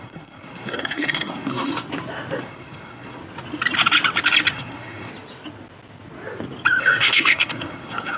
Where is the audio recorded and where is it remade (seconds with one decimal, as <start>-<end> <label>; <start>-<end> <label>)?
0.0-1.7 remade; 1.7-2.4 recorded; 2.4-3.2 remade; 3.2-4.5 recorded; 4.5-5.1 remade; 5.1-6.8 recorded; 6.8-8.2 remade